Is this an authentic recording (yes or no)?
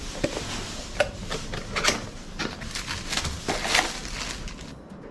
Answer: yes